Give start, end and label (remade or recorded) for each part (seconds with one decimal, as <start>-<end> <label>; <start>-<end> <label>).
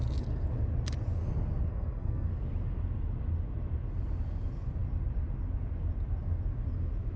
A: 0.0-1.7 recorded; 1.7-2.3 remade; 2.3-7.2 recorded